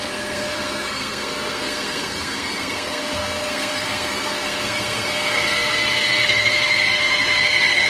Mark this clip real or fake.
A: fake